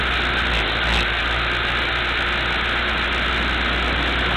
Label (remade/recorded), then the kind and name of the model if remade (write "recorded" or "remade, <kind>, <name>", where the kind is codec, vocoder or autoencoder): recorded